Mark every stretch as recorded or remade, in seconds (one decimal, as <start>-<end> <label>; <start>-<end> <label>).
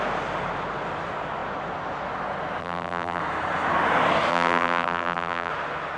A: 0.0-2.6 recorded; 2.6-3.2 remade; 3.2-4.3 recorded; 4.3-5.5 remade; 5.5-6.0 recorded